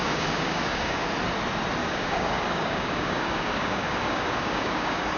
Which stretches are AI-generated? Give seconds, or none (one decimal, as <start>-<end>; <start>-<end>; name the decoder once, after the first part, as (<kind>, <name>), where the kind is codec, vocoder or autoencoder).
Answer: 0.0-1.1 (codec, DAC); 1.8-5.2